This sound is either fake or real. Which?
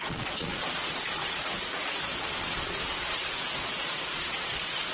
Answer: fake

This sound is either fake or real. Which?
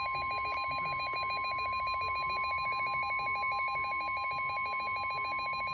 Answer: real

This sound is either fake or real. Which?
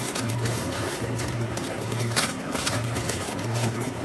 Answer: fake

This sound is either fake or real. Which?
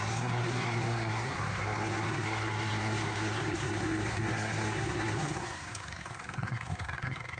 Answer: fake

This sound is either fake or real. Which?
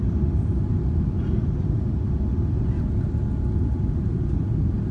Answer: real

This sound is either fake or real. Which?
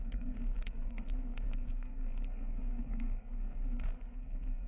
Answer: fake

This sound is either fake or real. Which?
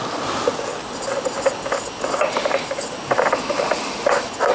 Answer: real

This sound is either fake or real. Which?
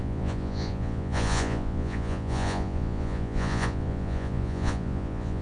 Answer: fake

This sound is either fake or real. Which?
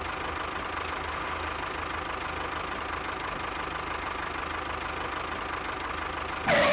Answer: real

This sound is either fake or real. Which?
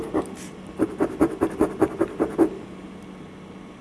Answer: real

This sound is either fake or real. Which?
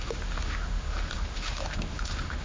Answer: fake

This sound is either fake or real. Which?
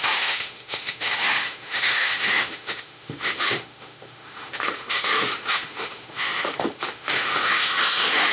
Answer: fake